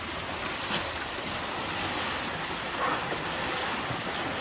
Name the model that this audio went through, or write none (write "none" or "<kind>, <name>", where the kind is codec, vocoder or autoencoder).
none